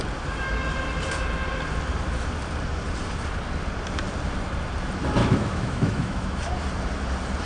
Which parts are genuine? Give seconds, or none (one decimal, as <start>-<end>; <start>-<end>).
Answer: 0.0-5.2; 6.4-7.5